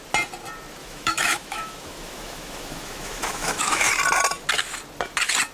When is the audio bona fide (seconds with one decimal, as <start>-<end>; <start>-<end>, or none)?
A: 0.0-0.8; 3.9-5.5

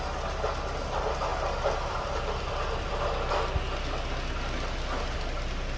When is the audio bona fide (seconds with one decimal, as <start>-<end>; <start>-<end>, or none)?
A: 0.0-1.3; 3.3-5.8

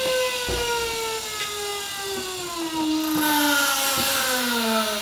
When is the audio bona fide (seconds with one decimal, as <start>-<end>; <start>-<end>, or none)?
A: 0.0-5.0

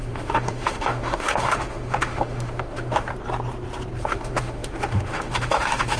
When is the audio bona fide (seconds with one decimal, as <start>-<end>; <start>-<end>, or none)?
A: 3.1-4.0